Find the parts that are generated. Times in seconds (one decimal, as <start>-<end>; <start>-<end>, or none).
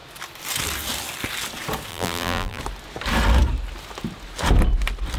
1.9-2.6